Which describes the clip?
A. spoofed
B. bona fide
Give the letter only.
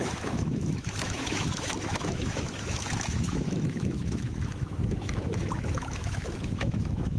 A